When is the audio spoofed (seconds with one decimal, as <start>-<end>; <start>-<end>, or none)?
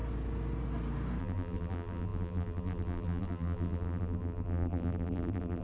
1.2-5.6